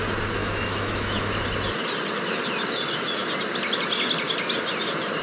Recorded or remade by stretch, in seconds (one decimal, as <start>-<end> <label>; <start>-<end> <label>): 0.0-0.4 recorded; 0.4-1.3 remade; 1.3-5.2 recorded